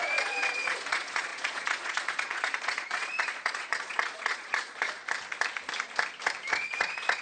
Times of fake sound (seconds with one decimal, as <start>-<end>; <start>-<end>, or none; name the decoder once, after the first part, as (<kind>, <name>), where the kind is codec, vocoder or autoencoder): 0.0-5.0 (vocoder, Vocos); 6.5-7.2